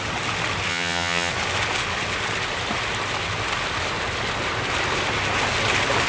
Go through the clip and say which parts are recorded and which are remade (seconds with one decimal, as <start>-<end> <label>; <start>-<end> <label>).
0.0-0.7 recorded; 0.7-1.3 remade; 1.3-6.1 recorded